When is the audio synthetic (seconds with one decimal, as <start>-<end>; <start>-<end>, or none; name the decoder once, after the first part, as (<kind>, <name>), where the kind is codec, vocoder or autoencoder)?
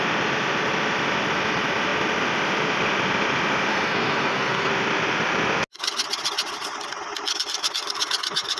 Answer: 3.7-4.7 (codec, SNAC)